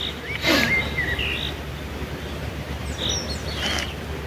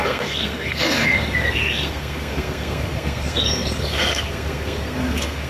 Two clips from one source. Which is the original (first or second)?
first